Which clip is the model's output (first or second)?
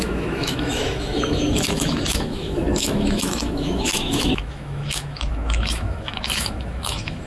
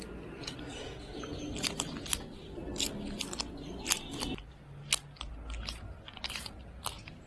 first